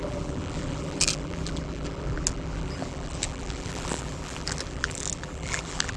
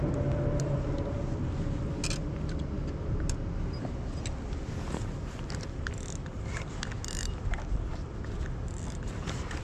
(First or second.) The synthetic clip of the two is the first